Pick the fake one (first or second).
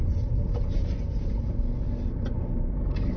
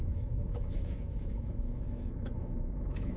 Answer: second